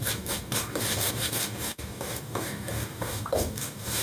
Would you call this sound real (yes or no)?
no